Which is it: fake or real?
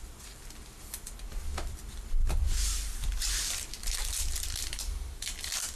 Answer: fake